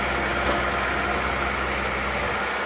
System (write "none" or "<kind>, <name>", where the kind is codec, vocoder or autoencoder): none